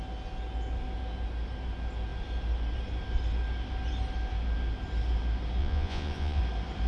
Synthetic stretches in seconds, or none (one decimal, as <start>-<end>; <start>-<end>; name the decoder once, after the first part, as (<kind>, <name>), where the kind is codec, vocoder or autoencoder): 5.6-6.4 (vocoder, Vocos)